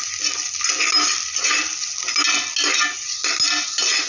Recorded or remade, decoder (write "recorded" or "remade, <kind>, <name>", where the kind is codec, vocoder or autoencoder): recorded